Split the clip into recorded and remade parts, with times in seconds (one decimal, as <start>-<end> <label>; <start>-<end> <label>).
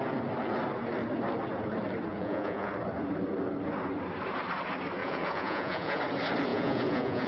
0.0-2.1 recorded; 2.1-2.7 remade; 2.7-5.0 recorded; 5.0-6.0 remade; 6.0-6.5 recorded; 6.5-7.3 remade